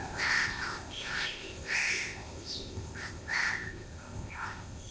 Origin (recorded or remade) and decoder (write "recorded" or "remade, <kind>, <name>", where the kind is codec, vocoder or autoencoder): remade, codec, ZipCodec